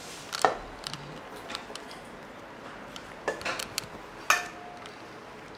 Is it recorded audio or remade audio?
recorded